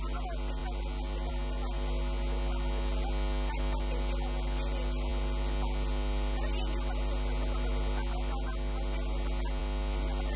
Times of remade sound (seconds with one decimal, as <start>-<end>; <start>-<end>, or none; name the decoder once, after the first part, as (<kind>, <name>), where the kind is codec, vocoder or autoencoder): none